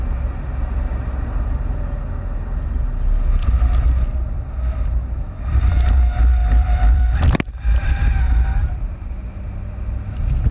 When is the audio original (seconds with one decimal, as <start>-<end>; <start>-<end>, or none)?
0.0-6.4; 7.5-10.5

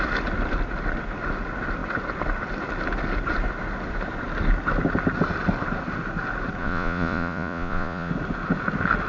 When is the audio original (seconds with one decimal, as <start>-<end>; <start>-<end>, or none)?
0.0-6.6; 8.1-9.1

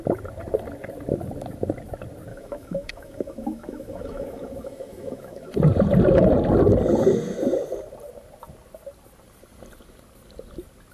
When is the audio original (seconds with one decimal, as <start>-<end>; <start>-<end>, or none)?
0.0-2.3; 5.5-10.9

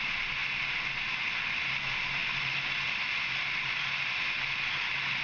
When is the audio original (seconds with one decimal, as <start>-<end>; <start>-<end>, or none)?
0.0-5.2